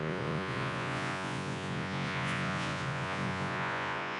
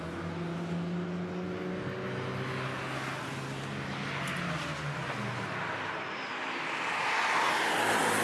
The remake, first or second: first